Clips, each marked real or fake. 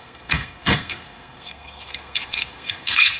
fake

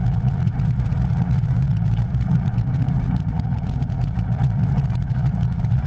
fake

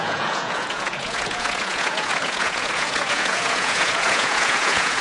fake